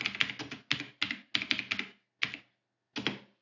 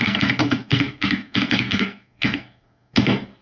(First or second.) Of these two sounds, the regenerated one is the second